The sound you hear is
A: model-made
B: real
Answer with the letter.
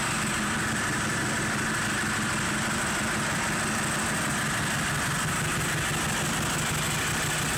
B